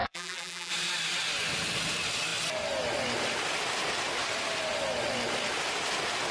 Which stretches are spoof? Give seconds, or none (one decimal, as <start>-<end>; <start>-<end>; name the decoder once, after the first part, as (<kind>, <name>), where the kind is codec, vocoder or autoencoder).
0.0-0.7 (vocoder, BigVGAN v2)